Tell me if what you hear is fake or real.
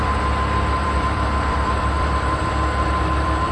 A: fake